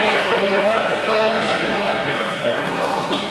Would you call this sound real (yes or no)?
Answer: no